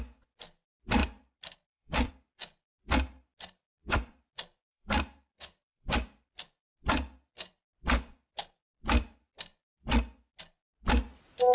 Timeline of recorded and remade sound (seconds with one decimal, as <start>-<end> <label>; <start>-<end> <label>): 0.0-1.0 recorded; 1.0-2.1 remade; 2.1-4.7 recorded; 4.7-6.3 remade; 6.3-11.5 recorded